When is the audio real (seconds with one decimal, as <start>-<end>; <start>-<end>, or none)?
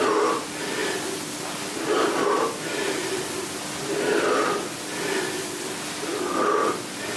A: 0.0-7.2